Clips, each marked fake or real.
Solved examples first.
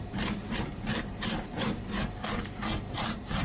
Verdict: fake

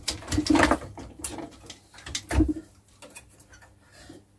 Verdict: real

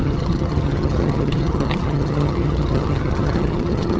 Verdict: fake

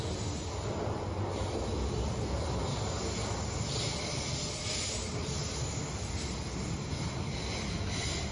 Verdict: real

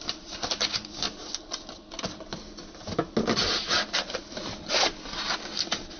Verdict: real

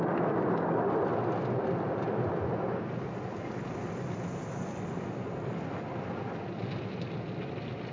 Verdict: real